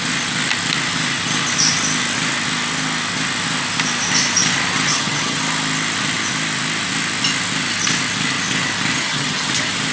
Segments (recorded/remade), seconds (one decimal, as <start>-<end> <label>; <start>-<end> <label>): 0.0-4.9 recorded; 4.9-5.4 remade; 5.4-8.9 recorded; 8.9-9.5 remade; 9.5-9.9 recorded